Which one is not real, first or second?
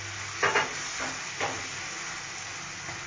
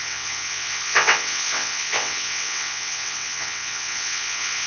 second